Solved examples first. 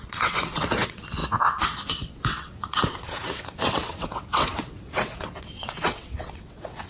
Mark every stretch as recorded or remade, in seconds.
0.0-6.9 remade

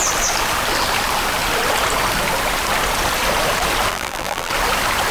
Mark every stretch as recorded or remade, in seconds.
0.0-3.9 recorded; 3.9-4.5 remade; 4.5-5.1 recorded

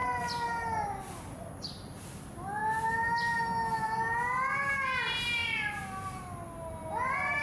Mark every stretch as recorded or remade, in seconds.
0.0-7.4 recorded